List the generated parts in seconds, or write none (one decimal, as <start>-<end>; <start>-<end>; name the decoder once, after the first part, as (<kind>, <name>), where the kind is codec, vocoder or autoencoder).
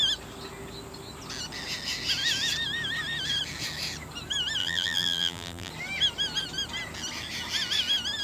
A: 4.6-5.7 (vocoder, BigVGAN v2)